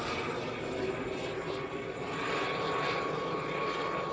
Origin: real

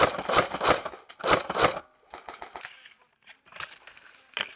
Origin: real